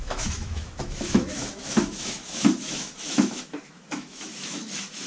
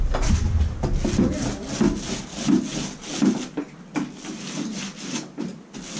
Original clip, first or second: second